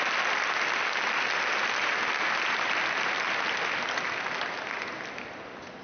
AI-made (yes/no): no